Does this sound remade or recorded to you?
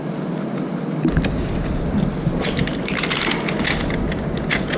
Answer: recorded